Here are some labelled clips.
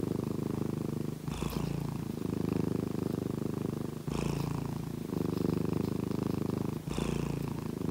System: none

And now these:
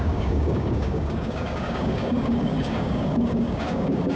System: codec, DAC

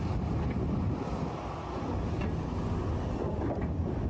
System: none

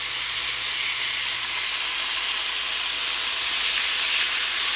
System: none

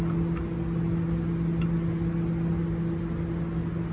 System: none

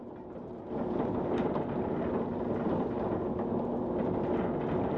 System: none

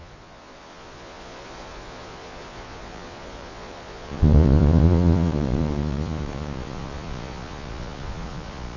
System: vocoder, Vocos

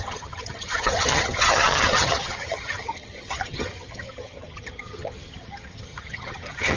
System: vocoder, HiFi-GAN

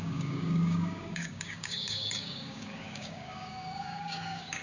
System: codec, DAC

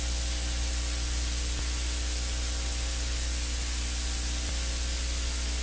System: none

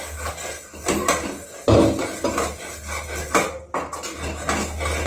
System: none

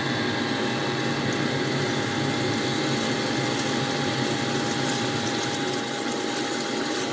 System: none